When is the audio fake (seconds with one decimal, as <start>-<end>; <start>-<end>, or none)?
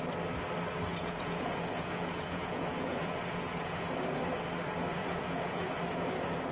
0.9-3.9; 5.0-5.7